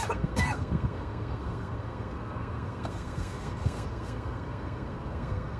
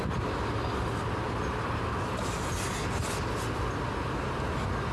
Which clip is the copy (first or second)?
first